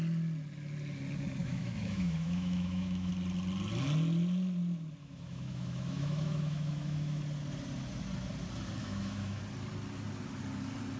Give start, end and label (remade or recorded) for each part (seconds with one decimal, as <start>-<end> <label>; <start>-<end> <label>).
0.0-1.4 recorded; 1.4-3.1 remade; 3.1-5.0 recorded; 5.0-7.2 remade; 7.2-8.8 recorded; 8.8-9.4 remade; 9.4-11.0 recorded